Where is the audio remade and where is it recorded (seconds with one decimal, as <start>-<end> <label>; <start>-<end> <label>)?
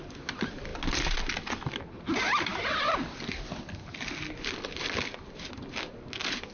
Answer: 0.0-6.5 recorded